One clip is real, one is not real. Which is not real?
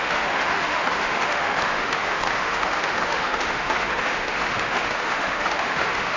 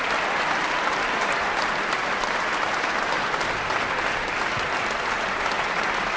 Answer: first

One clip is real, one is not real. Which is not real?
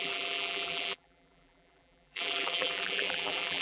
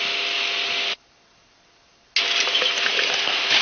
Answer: first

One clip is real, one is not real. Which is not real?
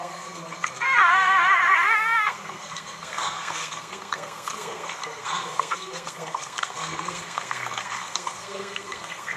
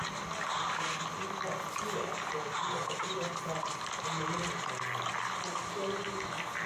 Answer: first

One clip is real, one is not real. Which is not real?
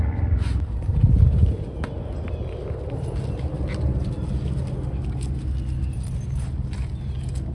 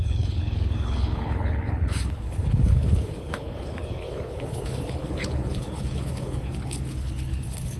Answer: second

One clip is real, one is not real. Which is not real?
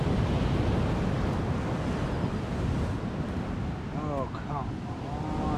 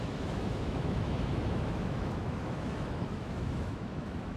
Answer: second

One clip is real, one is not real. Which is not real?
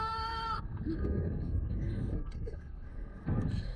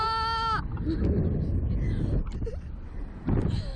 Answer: first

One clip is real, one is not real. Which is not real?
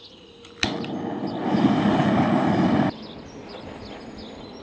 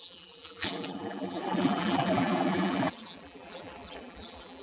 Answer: second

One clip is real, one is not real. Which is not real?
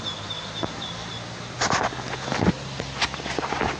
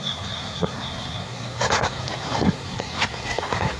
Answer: second